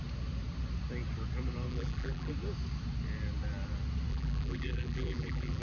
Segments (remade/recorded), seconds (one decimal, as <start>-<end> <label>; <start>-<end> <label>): 0.0-1.7 recorded; 1.7-2.3 remade; 2.3-4.1 recorded; 4.1-5.6 remade